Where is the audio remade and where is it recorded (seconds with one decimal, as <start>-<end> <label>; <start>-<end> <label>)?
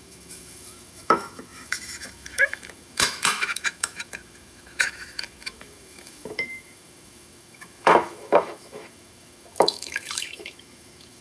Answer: 0.0-11.2 remade